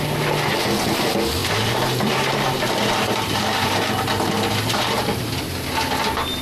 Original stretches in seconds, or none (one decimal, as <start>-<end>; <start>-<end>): 0.0-1.4; 5.2-6.4